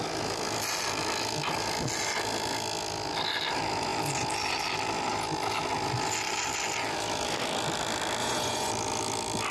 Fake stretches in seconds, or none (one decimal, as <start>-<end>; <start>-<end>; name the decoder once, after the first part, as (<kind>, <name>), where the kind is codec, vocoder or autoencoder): 8.2-8.7 (vocoder, Vocos)